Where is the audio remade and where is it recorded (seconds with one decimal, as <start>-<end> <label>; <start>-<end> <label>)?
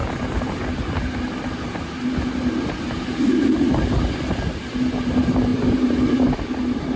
0.0-7.0 recorded